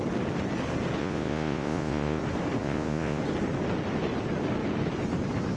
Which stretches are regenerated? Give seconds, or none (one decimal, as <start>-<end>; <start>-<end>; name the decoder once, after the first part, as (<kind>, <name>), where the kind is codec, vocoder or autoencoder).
1.0-2.2 (vocoder, Vocos); 2.6-3.2